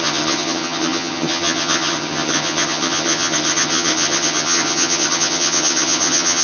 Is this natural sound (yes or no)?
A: no